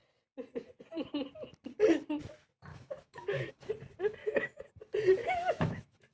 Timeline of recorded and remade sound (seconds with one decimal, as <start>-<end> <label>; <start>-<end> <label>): 0.0-2.7 recorded; 2.7-3.5 remade; 3.5-4.2 recorded; 4.2-4.7 remade; 4.7-5.2 recorded; 5.2-6.1 remade